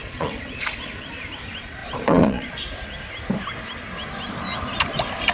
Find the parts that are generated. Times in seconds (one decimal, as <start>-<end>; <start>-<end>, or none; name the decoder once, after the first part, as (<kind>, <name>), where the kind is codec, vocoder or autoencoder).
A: 0.0-1.1 (vocoder, Vocos); 1.8-2.6